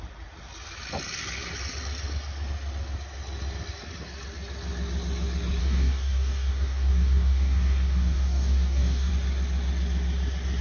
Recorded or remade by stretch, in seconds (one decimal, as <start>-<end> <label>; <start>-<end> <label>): 0.0-5.6 recorded; 5.6-9.1 remade; 9.1-10.6 recorded